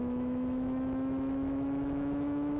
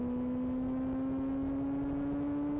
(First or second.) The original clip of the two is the second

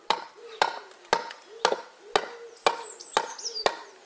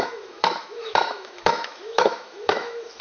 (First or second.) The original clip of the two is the first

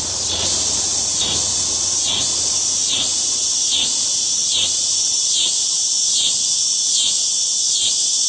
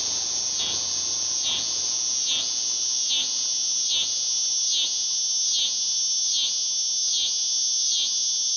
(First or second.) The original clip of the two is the second